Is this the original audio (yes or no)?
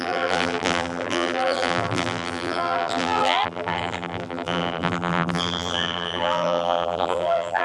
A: no